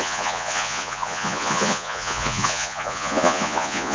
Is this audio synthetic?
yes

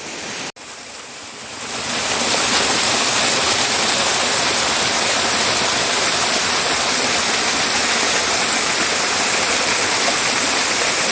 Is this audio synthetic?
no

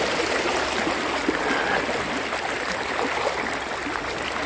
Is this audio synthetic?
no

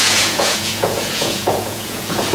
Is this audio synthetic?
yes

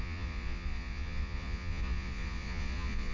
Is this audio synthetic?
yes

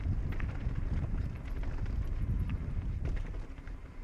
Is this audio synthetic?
no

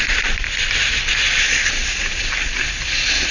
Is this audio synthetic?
no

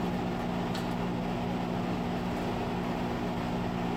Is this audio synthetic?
no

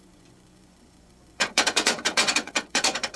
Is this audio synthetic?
yes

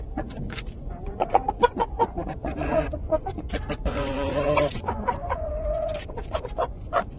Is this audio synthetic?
yes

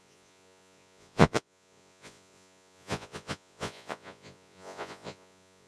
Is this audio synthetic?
yes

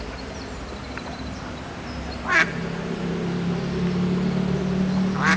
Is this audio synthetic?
no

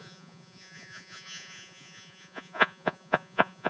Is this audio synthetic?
yes